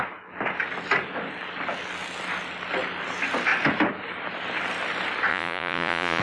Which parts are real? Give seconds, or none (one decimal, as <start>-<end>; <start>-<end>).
0.0-5.3